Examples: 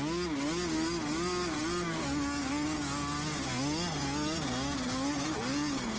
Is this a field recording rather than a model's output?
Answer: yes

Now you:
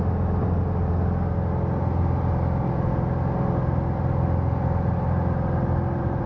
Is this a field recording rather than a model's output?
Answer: yes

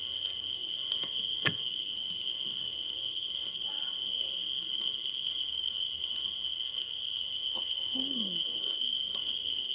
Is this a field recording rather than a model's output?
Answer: no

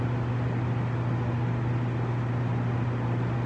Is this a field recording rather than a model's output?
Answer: yes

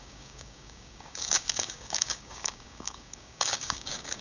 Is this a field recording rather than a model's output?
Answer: no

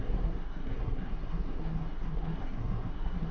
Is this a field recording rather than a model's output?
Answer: no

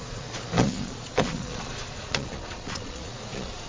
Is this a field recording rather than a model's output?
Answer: no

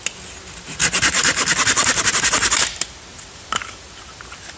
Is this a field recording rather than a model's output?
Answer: yes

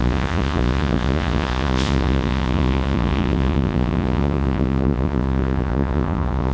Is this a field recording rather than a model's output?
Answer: no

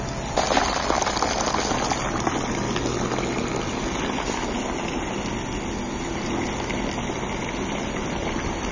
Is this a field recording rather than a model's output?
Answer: yes